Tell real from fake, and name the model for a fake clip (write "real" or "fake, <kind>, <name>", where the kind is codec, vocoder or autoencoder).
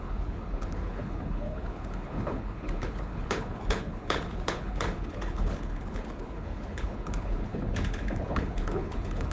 fake, codec, HILCodec